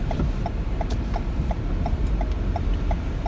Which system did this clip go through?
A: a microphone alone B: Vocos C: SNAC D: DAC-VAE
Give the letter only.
A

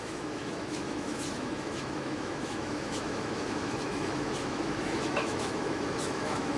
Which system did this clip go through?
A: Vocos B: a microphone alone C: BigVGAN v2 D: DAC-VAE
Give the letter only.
D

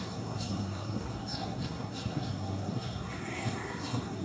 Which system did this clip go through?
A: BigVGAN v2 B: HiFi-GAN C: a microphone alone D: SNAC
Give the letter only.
D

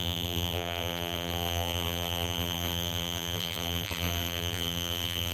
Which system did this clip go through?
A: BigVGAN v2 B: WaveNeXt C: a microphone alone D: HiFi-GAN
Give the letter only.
A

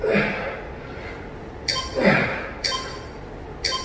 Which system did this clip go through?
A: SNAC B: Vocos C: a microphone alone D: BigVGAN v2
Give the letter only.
C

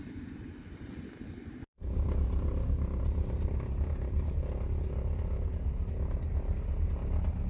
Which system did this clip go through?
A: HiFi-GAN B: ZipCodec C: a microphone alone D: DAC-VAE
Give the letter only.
C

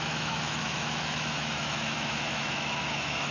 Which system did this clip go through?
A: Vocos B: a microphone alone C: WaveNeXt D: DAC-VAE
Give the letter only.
D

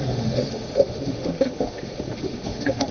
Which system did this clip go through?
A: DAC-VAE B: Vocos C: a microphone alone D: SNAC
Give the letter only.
A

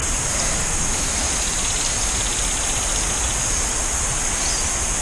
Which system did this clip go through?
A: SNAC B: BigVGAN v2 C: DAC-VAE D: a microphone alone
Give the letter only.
D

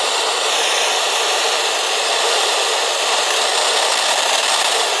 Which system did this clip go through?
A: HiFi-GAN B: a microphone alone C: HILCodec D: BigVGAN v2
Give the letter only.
D